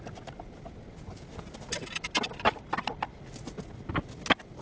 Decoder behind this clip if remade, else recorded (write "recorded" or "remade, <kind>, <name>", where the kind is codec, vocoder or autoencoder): recorded